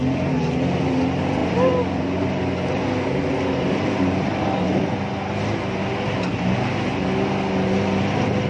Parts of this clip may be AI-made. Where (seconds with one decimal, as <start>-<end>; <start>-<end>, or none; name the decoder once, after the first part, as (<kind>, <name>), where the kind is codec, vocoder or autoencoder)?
none

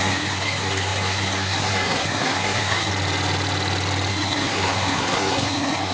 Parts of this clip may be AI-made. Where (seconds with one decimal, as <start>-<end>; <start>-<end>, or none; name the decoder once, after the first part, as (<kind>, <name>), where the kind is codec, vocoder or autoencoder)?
0.0-2.9 (codec, SNAC); 4.1-5.9

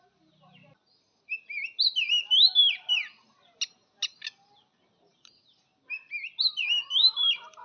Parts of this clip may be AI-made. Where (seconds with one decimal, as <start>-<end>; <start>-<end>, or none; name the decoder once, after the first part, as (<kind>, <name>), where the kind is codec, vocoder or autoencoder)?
none

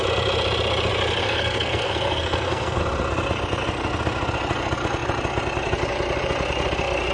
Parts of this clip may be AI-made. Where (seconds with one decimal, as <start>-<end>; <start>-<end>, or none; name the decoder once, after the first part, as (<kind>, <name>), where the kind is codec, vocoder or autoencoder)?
1.2-2.8 (codec, SNAC)

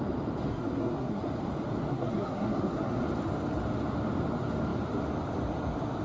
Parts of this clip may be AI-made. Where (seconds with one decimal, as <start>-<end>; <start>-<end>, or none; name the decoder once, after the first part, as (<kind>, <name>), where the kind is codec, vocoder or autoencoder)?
0.5-1.2 (codec, SNAC); 1.9-3.0

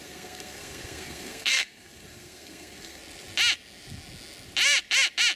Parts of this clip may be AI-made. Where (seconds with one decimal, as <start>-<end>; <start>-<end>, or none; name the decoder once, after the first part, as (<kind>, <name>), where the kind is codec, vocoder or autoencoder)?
0.0-3.0 (codec, SNAC)